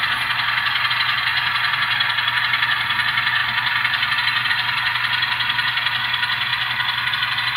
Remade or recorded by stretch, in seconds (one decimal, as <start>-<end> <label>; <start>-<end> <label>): 0.0-1.3 recorded; 1.3-2.4 remade; 2.4-7.6 recorded